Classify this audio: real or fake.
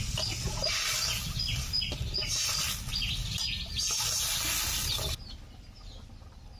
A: real